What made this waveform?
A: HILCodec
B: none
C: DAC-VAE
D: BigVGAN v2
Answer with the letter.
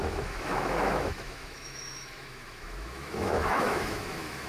C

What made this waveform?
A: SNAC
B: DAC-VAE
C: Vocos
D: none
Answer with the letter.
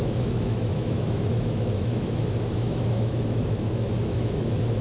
B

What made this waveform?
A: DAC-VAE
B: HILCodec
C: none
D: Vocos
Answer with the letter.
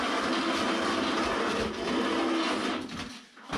C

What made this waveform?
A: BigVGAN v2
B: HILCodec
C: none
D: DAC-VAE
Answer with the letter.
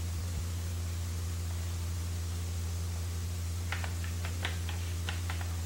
C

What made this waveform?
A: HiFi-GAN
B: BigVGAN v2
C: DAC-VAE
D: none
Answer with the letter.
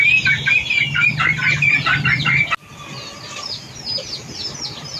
D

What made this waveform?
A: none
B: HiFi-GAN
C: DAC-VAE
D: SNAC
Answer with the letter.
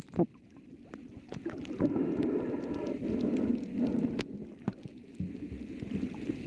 A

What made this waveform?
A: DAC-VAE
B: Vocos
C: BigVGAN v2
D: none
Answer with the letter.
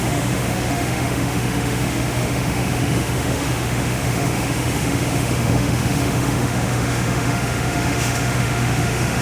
A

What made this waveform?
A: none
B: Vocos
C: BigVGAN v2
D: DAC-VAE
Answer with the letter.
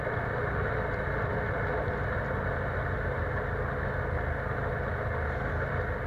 A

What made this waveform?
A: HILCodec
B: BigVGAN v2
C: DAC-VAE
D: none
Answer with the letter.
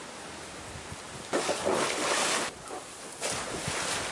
D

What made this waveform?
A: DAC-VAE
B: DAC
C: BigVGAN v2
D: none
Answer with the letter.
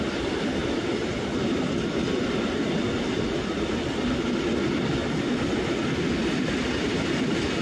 D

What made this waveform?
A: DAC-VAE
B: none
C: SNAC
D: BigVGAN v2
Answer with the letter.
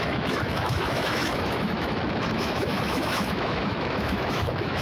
A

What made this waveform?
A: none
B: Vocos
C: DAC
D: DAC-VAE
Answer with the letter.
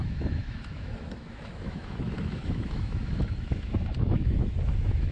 D